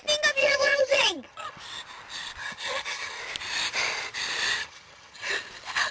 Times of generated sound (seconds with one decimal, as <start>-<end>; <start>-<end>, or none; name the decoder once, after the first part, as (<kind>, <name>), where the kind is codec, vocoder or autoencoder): 0.4-1.6 (vocoder, HiFi-GAN); 2.4-3.2; 4.6-5.3